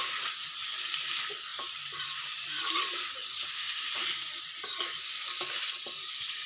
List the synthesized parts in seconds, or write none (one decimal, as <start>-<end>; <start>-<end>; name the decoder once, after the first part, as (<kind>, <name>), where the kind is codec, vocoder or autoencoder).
1.5-4.4 (vocoder, BigVGAN v2)